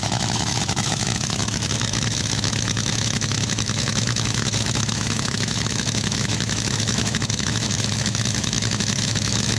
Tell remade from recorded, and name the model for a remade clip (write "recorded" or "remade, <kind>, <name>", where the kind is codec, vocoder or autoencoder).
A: remade, autoencoder, DAC-VAE